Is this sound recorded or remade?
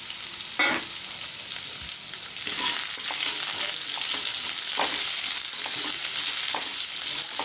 recorded